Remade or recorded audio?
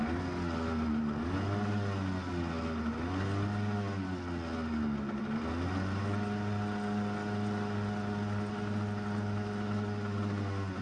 recorded